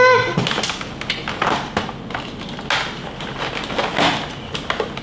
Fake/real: real